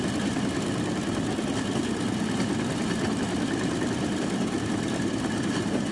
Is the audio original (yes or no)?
yes